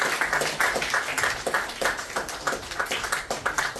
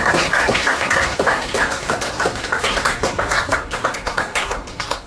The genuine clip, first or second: first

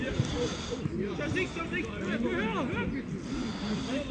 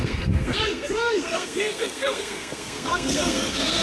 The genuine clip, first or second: first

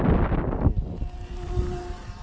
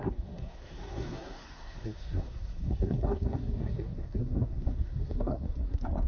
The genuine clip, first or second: first